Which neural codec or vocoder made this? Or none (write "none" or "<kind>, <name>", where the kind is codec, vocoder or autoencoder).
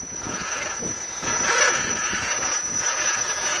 vocoder, Vocos